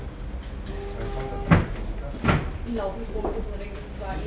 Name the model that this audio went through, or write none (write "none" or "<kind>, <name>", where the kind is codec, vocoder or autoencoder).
none